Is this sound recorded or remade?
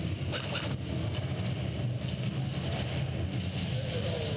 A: recorded